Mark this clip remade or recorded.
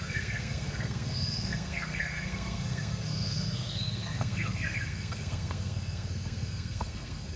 remade